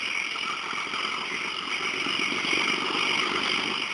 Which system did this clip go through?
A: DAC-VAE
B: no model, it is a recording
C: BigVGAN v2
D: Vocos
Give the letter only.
B